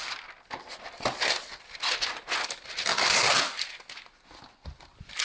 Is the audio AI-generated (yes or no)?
no